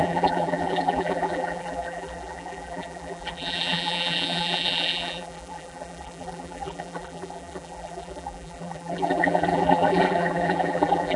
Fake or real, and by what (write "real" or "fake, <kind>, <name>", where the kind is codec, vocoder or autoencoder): fake, vocoder, BigVGAN v2